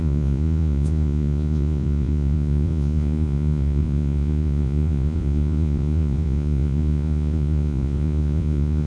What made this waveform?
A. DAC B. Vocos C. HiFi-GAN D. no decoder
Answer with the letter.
B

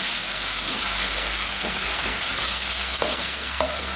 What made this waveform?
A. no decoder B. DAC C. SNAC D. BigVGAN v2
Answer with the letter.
C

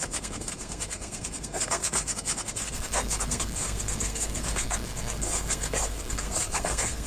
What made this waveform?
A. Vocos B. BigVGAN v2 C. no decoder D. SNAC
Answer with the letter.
D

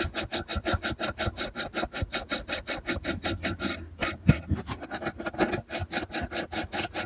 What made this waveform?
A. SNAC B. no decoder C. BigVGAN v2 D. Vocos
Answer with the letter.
B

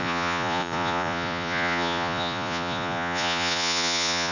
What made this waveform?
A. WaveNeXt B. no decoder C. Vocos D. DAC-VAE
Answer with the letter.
C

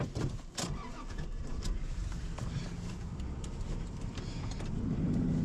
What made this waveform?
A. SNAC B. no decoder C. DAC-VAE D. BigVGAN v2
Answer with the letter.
D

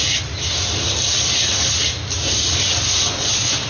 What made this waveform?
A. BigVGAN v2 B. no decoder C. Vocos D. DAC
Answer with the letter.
B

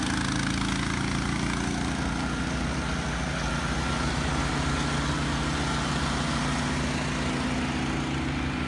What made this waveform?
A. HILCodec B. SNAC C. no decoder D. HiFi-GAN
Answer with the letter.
C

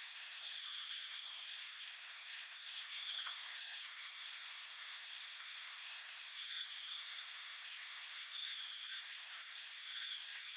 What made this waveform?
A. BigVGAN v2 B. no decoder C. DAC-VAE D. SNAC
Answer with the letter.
D